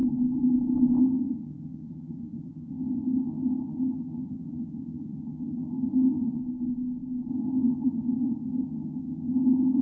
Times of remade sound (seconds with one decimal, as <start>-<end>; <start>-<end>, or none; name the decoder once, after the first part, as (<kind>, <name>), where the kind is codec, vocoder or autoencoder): 1.0-6.4 (vocoder, HiFi-GAN); 7.3-9.8